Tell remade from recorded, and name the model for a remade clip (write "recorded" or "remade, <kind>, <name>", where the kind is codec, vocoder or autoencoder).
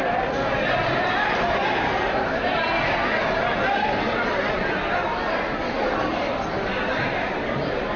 recorded